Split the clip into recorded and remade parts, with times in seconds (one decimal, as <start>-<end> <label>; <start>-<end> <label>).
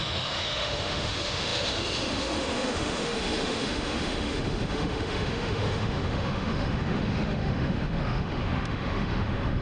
0.0-9.6 remade